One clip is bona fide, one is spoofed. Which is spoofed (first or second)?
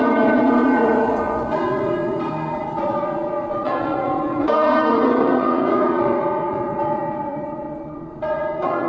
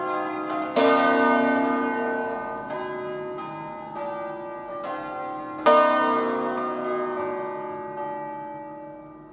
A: first